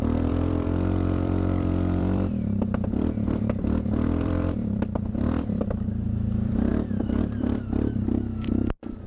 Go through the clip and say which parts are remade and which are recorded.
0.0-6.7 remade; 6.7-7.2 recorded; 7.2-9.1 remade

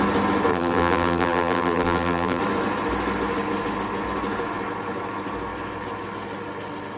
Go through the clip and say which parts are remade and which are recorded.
0.0-0.5 recorded; 0.5-2.4 remade; 2.4-7.0 recorded